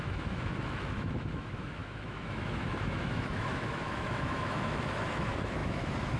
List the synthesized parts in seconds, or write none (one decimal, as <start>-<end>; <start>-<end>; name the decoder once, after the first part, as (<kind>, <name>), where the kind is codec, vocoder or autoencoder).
0.0-6.2 (autoencoder, DAC-VAE)